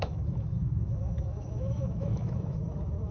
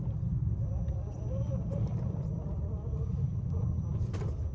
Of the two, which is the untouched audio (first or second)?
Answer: second